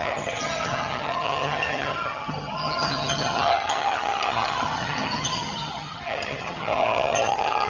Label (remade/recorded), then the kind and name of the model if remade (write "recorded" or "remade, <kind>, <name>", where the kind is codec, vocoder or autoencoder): remade, vocoder, HiFi-GAN